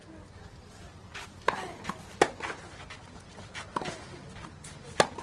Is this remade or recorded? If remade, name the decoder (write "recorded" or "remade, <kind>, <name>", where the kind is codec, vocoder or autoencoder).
recorded